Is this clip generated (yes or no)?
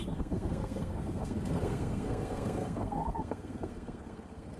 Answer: yes